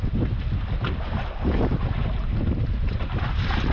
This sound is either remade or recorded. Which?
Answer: recorded